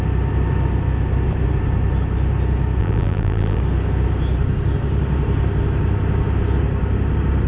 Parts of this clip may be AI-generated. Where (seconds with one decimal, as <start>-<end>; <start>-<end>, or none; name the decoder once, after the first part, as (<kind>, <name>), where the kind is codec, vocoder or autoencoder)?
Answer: 2.8-3.6 (vocoder, BigVGAN v2)